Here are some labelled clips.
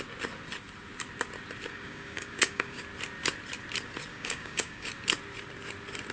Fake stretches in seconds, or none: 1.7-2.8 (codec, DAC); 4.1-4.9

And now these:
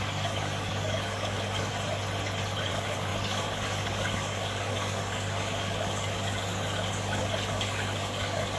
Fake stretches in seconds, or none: 0.0-1.7 (codec, DAC); 2.7-8.6

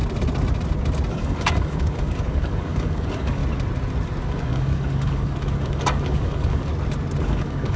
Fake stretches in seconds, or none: 1.1-3.4 (codec, DAC); 4.3-6.7; 7.2-7.8